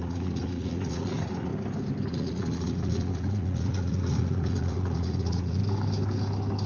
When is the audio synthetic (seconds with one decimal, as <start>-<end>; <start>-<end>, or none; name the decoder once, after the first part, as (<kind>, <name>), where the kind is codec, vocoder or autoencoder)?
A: 0.0-1.5 (vocoder, Vocos); 2.1-5.6